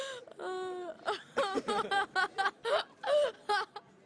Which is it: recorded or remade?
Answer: recorded